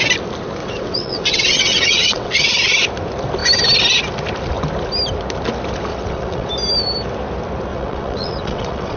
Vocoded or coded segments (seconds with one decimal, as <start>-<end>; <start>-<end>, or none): 0.6-2.4; 5.9-6.5; 7.7-9.0